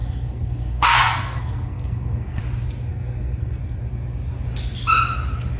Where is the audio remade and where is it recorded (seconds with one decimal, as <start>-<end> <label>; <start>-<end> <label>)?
0.0-2.4 remade; 2.4-2.9 recorded; 2.9-3.6 remade; 3.6-5.6 recorded